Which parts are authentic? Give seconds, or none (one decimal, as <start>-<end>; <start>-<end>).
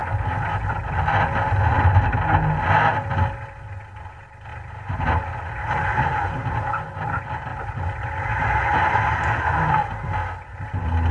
0.0-11.1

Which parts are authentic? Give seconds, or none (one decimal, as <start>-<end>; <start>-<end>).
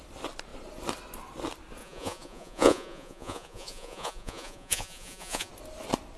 0.0-1.8; 5.5-6.2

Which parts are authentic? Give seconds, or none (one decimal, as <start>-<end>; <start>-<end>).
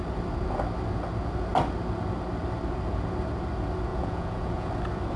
0.0-3.9; 4.7-5.2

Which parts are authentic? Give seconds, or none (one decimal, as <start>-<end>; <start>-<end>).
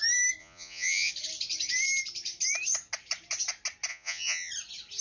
0.0-0.4; 1.1-3.9; 4.5-5.0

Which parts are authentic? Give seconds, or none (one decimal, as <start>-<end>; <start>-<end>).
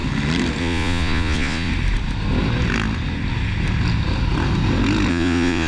0.0-0.6; 1.7-5.1